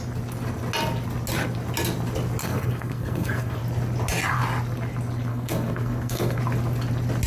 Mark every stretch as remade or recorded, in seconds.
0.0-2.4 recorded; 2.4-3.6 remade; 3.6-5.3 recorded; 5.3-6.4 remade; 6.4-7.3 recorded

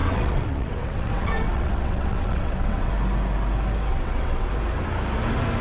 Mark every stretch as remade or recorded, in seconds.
0.0-2.9 remade; 2.9-3.9 recorded; 3.9-4.5 remade; 4.5-5.6 recorded

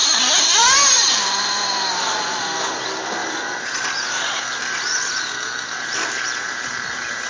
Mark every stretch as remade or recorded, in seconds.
0.0-7.3 recorded

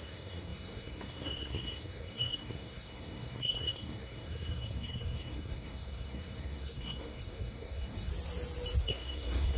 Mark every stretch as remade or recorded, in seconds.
0.0-8.1 remade; 8.1-8.8 recorded; 8.8-9.6 remade

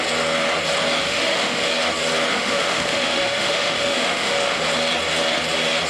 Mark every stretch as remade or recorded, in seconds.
0.0-1.0 recorded; 1.0-1.7 remade; 1.7-2.3 recorded; 2.3-4.6 remade; 4.6-5.9 recorded

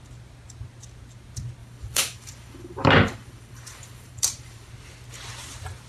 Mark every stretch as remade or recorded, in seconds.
0.0-1.6 recorded; 1.6-4.7 remade; 4.7-5.9 recorded

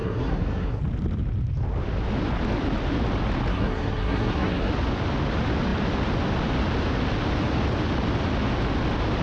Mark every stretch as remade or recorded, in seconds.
0.0-0.8 remade; 0.8-3.5 recorded; 3.5-4.7 remade; 4.7-9.2 recorded